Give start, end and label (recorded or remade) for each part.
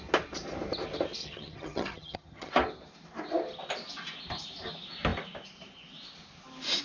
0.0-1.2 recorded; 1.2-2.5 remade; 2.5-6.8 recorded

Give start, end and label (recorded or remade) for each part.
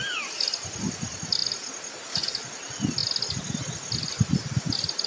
0.0-5.1 recorded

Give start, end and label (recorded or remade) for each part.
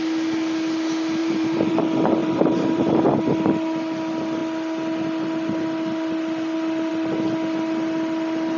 0.0-1.2 recorded; 1.2-1.8 remade; 1.8-2.2 recorded; 2.2-3.0 remade; 3.0-8.6 recorded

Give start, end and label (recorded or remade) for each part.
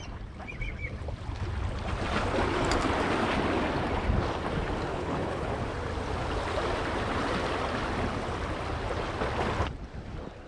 0.0-4.9 recorded; 4.9-5.5 remade; 5.5-10.5 recorded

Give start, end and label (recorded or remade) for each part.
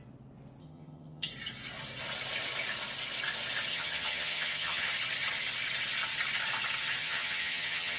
0.0-0.6 recorded; 0.6-1.3 remade; 1.3-3.7 recorded; 3.7-4.9 remade; 4.9-7.0 recorded; 7.0-8.0 remade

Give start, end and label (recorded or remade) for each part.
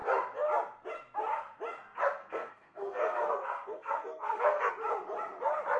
0.0-2.2 recorded; 2.2-4.7 remade; 4.7-5.8 recorded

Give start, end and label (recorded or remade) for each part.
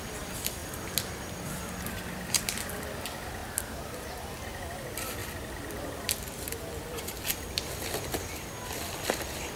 0.0-9.6 recorded